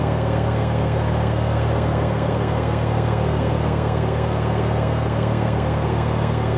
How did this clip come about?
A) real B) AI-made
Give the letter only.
B